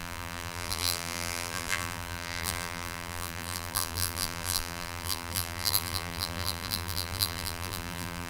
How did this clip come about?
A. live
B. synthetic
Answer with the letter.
B